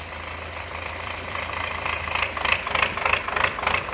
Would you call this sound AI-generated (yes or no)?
yes